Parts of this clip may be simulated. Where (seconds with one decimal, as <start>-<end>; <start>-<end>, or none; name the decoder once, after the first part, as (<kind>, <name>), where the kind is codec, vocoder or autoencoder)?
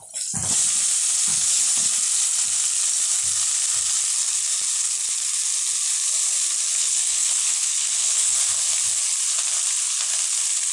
1.3-1.9 (codec, HILCodec); 6.7-8.4